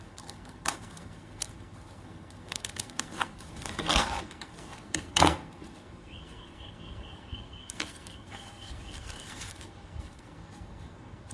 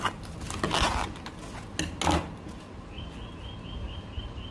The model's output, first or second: first